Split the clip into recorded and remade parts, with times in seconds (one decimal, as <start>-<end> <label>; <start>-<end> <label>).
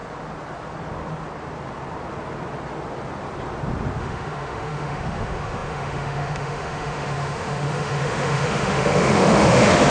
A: 0.0-4.0 recorded; 4.0-9.9 remade